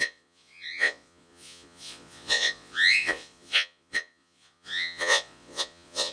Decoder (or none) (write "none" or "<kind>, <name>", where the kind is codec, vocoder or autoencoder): vocoder, Vocos